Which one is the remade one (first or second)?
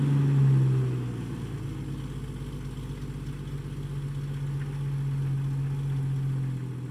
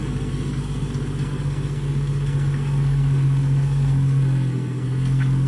second